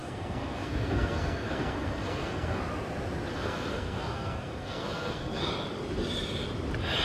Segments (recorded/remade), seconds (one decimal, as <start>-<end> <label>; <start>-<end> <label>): 0.0-2.6 remade; 2.6-3.3 recorded; 3.3-5.5 remade; 5.5-7.0 recorded